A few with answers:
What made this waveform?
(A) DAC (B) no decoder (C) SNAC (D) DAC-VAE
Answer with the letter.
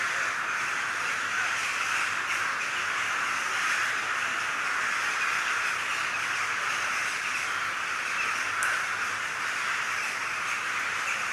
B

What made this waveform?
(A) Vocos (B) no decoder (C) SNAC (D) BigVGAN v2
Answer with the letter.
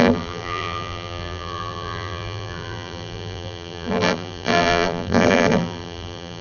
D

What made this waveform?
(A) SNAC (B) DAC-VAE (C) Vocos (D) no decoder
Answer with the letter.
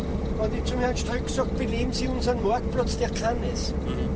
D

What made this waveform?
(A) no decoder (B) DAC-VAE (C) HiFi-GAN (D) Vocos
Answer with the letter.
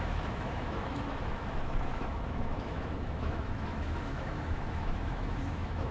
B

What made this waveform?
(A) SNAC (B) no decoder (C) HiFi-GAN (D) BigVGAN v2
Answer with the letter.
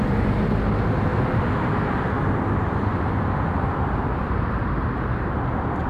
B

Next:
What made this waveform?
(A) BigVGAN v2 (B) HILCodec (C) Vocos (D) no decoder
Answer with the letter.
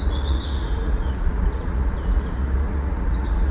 C